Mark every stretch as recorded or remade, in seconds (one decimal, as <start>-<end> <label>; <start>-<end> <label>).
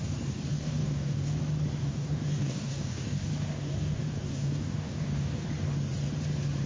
0.0-0.5 recorded; 0.5-1.4 remade; 1.4-1.8 recorded; 1.8-5.4 remade; 5.4-6.7 recorded